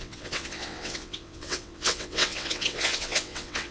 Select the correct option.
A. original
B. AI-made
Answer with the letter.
B